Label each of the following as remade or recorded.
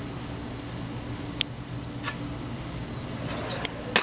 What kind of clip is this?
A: recorded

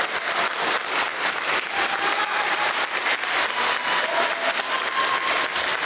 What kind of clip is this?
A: recorded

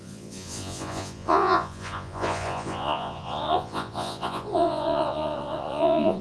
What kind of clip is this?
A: remade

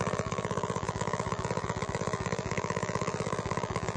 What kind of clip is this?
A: remade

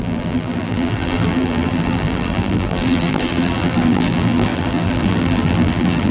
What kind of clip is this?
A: remade